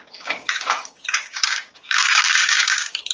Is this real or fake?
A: fake